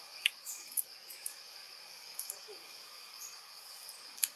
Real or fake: fake